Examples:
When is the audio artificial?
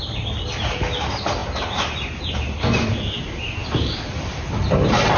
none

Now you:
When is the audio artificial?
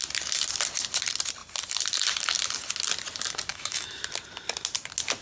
3.5-4.0 (autoencoder, DAC-VAE)